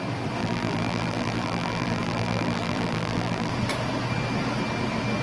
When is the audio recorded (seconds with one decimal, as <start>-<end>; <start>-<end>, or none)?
0.0-0.4; 3.5-5.2